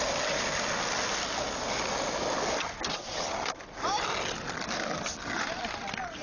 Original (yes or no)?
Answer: yes